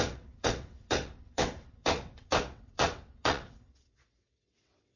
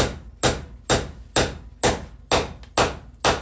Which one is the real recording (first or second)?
second